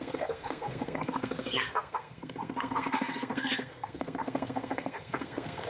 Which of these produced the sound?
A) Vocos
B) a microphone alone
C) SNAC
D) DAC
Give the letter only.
C